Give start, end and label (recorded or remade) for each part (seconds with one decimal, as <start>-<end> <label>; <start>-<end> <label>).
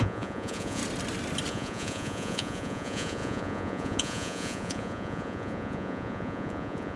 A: 0.0-0.8 remade; 0.8-1.5 recorded; 1.5-7.0 remade